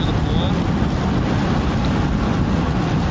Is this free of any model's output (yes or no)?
yes